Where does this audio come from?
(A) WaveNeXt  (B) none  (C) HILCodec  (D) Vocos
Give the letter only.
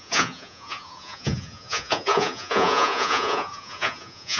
D